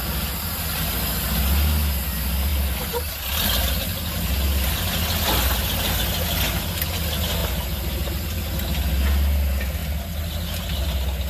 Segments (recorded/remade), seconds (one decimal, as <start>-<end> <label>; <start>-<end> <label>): 0.0-11.3 recorded